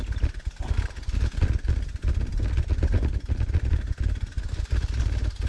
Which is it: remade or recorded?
recorded